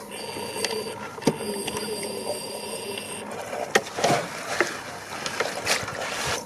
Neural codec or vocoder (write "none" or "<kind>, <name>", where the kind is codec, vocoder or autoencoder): none